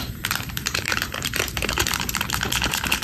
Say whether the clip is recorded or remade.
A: remade